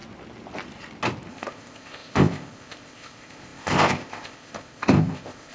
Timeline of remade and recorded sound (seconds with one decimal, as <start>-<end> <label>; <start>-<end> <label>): 0.0-1.3 recorded; 1.3-5.5 remade